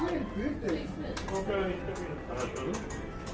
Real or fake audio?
real